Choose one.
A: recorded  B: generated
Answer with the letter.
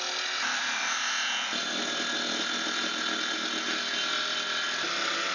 A